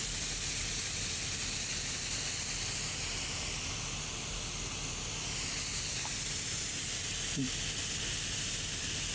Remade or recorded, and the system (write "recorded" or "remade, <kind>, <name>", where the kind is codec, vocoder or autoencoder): recorded